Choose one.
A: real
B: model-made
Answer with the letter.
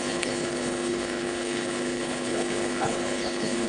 B